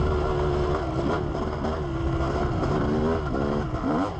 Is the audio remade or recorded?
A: recorded